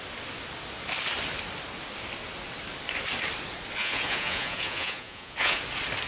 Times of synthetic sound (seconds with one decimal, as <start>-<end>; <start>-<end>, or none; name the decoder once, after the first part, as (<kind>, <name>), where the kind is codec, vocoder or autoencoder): 3.8-5.6 (vocoder, Vocos)